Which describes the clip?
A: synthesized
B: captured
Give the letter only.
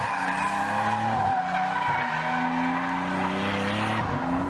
B